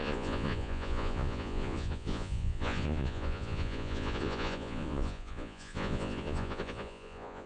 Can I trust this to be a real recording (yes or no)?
no